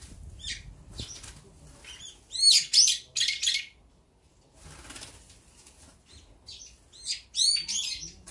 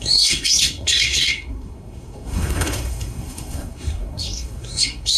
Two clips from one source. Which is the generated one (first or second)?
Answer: second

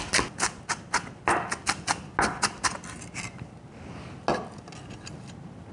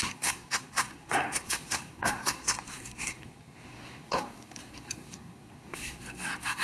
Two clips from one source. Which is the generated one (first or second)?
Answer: second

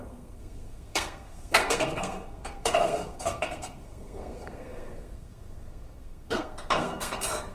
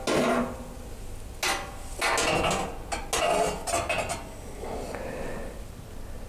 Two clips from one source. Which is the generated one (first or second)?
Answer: first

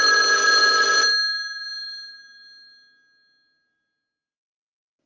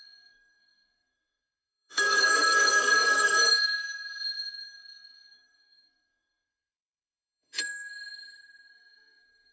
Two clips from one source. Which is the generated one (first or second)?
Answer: second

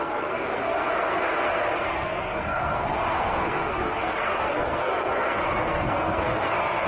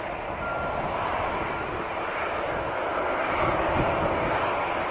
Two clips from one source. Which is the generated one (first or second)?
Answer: first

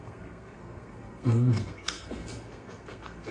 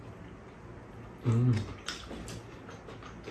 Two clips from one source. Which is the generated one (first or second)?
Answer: first